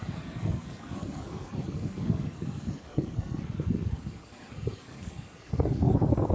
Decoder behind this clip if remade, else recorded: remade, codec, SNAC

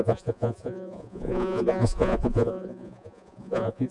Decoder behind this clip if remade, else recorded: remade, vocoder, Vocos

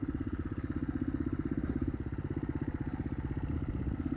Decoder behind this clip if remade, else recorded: recorded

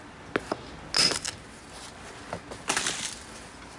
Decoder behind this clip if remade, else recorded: recorded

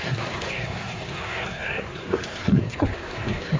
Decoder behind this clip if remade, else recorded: remade, codec, SNAC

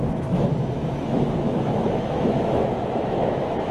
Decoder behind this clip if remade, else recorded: remade, autoencoder, DAC-VAE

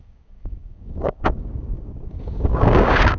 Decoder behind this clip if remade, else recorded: remade, codec, DAC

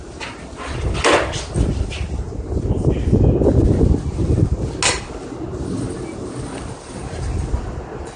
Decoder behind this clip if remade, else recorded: recorded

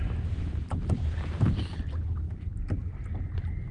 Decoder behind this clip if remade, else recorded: remade, vocoder, BigVGAN v2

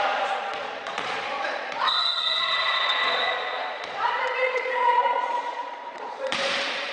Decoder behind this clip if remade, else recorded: remade, vocoder, Vocos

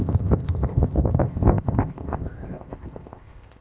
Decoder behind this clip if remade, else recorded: remade, codec, ZipCodec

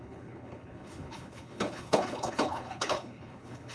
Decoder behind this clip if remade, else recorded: remade, codec, HILCodec